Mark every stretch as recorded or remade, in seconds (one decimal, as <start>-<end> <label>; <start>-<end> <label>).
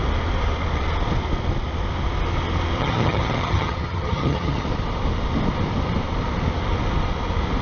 0.0-2.8 recorded; 2.8-4.7 remade; 4.7-7.6 recorded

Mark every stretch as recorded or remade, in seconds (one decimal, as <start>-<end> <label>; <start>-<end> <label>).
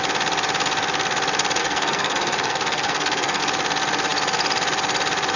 0.0-1.6 recorded; 1.6-3.4 remade; 3.4-5.4 recorded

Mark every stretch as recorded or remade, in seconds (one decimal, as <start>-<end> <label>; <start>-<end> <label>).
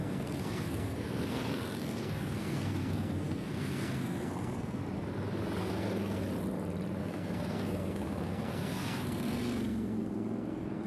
0.0-4.8 remade; 4.8-5.6 recorded; 5.6-6.2 remade; 6.2-7.0 recorded; 7.0-10.9 remade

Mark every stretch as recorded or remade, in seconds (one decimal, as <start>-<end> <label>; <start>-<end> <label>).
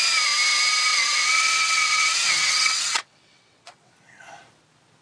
0.0-0.9 recorded; 0.9-3.9 remade; 3.9-5.0 recorded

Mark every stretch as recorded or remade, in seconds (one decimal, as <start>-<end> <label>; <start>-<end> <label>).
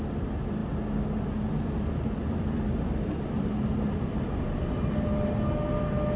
0.0-6.2 recorded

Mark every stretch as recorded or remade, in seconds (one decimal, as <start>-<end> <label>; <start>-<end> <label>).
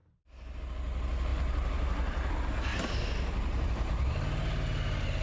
0.0-0.6 remade; 0.6-1.3 recorded; 1.3-2.3 remade; 2.3-2.7 recorded; 2.7-4.1 remade; 4.1-5.2 recorded